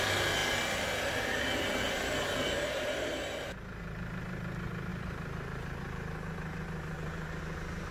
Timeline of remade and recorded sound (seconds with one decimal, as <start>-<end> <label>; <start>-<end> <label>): 0.0-4.9 recorded; 4.9-7.4 remade; 7.4-7.9 recorded